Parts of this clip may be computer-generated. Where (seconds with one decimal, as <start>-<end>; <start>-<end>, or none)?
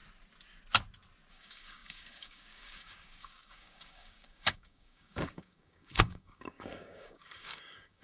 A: 1.3-8.0